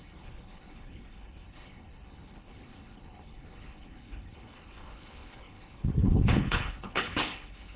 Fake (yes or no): yes